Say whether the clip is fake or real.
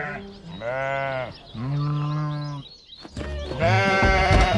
real